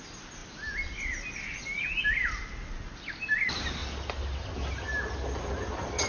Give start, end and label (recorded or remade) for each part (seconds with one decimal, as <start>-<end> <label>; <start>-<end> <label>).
0.0-6.1 recorded